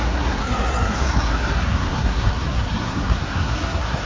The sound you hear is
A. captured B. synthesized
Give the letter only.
B